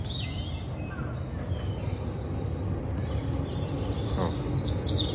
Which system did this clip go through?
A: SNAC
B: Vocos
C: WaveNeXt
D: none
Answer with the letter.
D